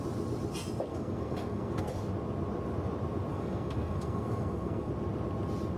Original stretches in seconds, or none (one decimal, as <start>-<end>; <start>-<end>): 0.0-0.9; 2.0-3.3; 4.9-5.8